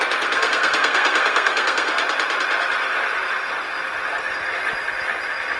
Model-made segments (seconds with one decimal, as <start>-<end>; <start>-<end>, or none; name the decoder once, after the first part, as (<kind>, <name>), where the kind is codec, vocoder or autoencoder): 0.0-2.0 (codec, SNAC)